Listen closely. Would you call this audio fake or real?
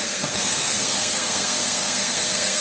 fake